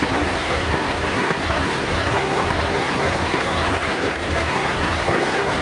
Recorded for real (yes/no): no